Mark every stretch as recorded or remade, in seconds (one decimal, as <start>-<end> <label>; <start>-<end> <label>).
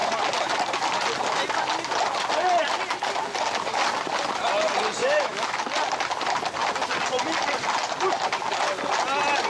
0.0-5.0 recorded; 5.0-5.6 remade; 5.6-9.5 recorded